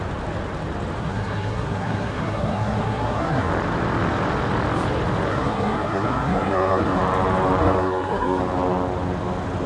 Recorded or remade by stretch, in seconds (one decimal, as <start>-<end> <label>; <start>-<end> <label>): 0.0-1.0 recorded; 1.0-3.5 remade; 3.5-5.3 recorded; 5.3-7.0 remade; 7.0-7.6 recorded; 7.6-8.4 remade; 8.4-9.7 recorded